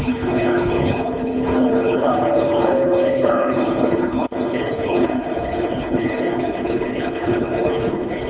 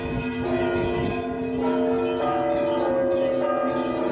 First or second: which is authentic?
second